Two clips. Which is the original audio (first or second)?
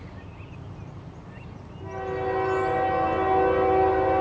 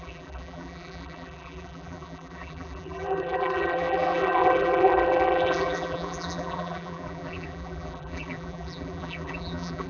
first